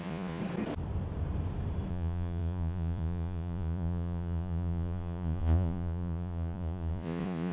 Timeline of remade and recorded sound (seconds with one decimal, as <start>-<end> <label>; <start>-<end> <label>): 0.0-0.4 remade; 0.4-1.9 recorded; 1.9-7.5 remade